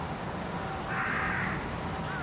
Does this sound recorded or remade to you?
recorded